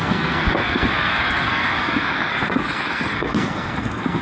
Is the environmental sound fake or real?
fake